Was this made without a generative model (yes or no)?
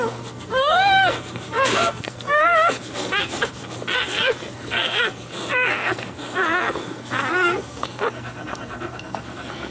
no